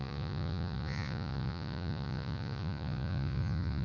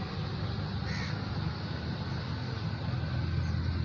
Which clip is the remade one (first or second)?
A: first